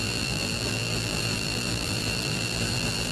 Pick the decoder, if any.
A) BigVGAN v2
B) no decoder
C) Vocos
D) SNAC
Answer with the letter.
A